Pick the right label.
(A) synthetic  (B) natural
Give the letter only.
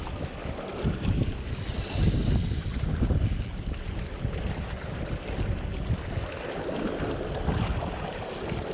B